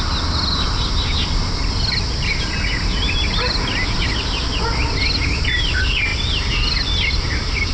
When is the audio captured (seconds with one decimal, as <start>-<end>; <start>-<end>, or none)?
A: 0.0-7.7